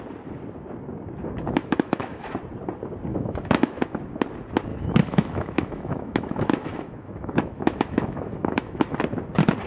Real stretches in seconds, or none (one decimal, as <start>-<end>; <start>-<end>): 0.0-1.6; 2.3-3.1; 3.8-4.7; 9.0-9.7

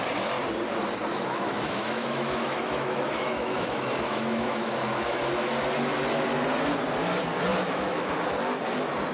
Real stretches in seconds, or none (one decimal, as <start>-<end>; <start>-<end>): 0.0-1.1; 5.2-7.5; 8.1-9.1

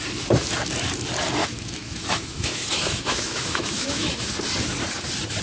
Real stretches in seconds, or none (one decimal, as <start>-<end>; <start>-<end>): 0.0-1.4; 4.3-5.4

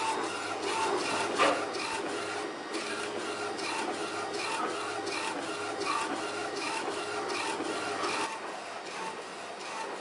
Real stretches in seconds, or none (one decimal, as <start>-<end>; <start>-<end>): 0.0-6.4; 7.0-10.0

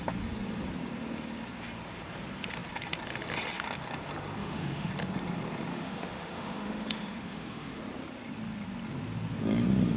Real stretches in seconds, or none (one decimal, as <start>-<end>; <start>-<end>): 0.0-4.4; 4.9-5.7; 7.8-10.0

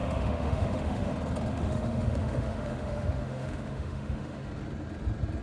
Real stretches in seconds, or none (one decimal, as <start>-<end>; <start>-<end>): 1.1-1.5; 4.5-5.4

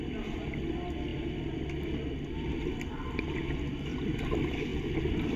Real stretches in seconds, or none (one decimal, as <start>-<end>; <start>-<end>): 0.0-5.4